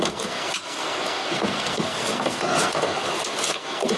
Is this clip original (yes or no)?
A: no